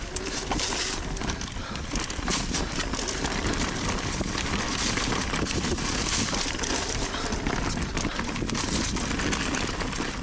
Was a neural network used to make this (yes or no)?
no